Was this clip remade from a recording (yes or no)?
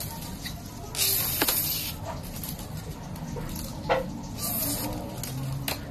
no